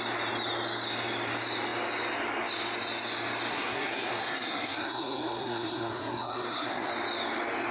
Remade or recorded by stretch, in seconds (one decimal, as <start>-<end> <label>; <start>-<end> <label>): 0.0-3.5 recorded; 3.5-6.9 remade; 6.9-7.7 recorded

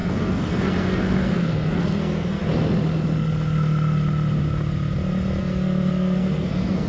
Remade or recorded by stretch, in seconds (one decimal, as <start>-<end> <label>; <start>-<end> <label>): 0.0-2.4 remade; 2.4-5.4 recorded; 5.4-6.9 remade

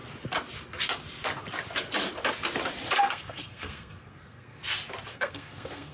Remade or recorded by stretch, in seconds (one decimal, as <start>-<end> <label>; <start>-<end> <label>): 0.0-3.0 recorded; 3.0-4.6 remade; 4.6-5.1 recorded; 5.1-5.9 remade

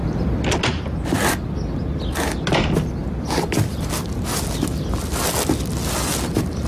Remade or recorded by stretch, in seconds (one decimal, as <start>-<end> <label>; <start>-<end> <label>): 0.0-6.7 recorded

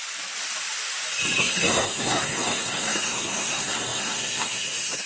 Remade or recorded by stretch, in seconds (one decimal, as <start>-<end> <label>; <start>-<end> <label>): 0.0-1.4 recorded; 1.4-5.1 remade

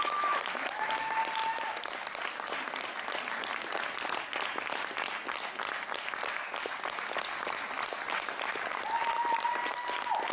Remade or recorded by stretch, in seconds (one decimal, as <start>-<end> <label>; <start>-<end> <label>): 0.0-10.3 recorded